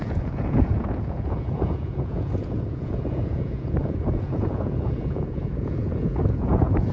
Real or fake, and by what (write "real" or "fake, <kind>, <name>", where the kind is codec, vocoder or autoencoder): fake, vocoder, Vocos